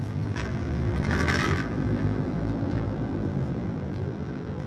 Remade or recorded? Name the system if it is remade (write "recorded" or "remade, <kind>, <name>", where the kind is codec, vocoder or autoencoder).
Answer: remade, vocoder, BigVGAN v2